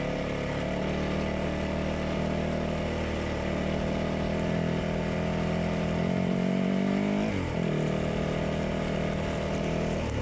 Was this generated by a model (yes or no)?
no